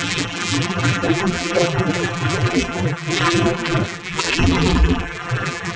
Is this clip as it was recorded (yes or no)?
no